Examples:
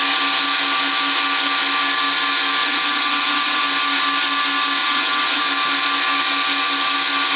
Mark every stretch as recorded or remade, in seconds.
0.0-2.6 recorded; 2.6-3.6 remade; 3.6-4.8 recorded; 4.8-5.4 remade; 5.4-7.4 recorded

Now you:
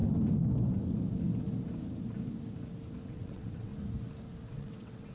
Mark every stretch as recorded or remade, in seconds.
0.0-3.1 recorded; 3.1-3.7 remade; 3.7-4.5 recorded; 4.5-5.1 remade